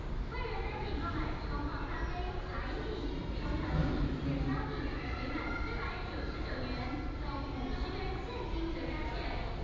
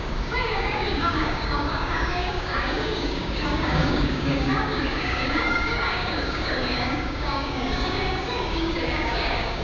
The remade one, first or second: second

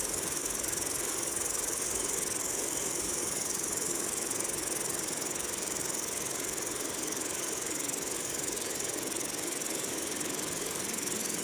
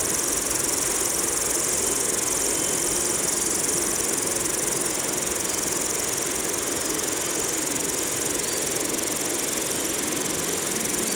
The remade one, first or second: first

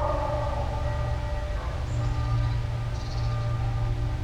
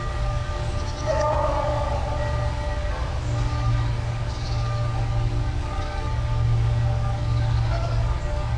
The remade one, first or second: second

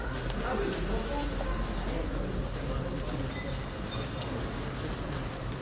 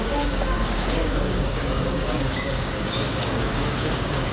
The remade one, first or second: second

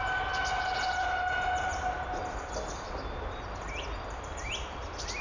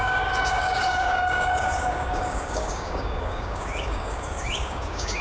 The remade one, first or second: second